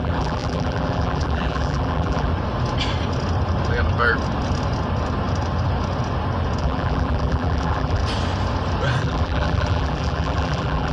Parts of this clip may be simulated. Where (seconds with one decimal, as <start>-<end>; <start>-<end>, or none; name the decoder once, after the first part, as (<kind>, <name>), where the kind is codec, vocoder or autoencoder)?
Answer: 0.0-2.3 (vocoder, BigVGAN v2); 6.6-8.0; 9.0-10.9